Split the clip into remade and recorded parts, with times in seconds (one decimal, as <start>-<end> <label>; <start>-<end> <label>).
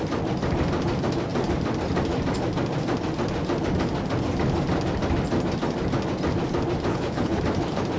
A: 0.0-6.9 recorded; 6.9-7.4 remade; 7.4-8.0 recorded